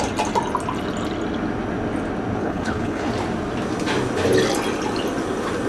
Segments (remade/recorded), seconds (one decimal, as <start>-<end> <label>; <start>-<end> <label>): 0.0-2.4 recorded; 2.4-3.1 remade; 3.1-5.7 recorded